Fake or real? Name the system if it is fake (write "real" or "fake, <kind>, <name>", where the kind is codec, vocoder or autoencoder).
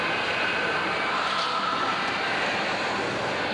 real